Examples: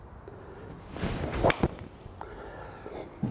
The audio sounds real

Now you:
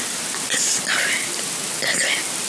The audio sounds real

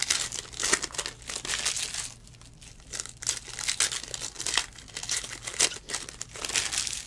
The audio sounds real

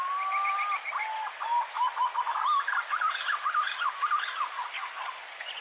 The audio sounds real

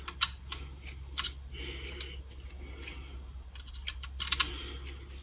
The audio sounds real